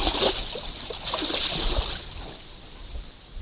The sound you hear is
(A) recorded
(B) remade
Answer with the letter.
A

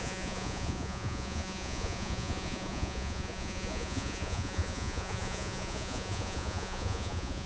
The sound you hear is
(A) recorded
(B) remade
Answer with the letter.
B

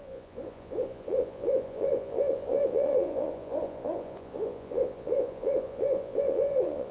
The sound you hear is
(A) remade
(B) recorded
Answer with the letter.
A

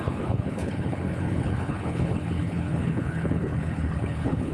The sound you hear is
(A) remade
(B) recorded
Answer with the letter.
A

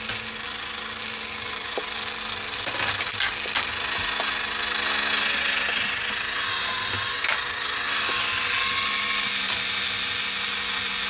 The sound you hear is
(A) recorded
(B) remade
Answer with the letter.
A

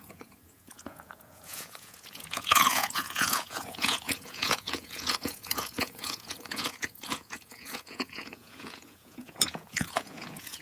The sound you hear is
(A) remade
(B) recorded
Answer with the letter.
A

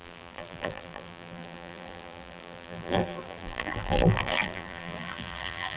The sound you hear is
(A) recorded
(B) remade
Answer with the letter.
B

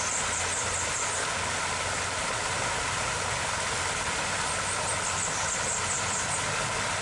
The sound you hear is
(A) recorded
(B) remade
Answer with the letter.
A